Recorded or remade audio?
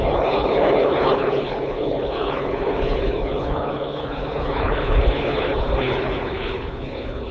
remade